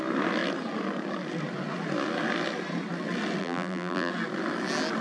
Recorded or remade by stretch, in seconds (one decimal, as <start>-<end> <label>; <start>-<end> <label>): 0.0-3.4 recorded; 3.4-4.1 remade; 4.1-5.0 recorded